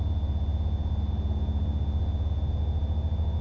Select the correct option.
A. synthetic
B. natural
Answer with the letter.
B